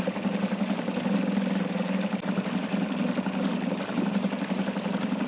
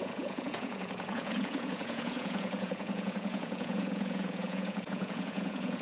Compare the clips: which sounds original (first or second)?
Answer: first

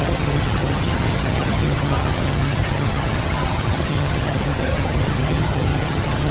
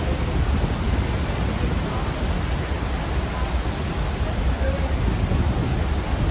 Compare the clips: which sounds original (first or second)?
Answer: second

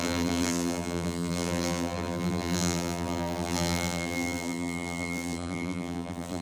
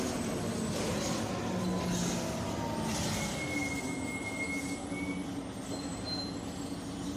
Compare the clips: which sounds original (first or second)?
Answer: second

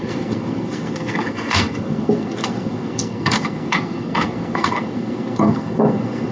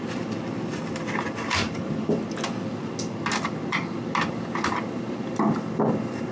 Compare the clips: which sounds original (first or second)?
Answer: second